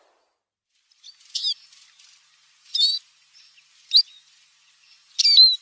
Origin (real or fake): real